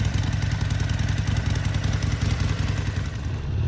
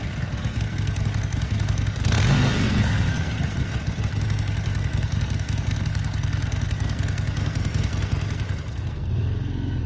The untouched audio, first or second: first